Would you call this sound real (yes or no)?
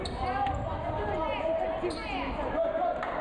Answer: yes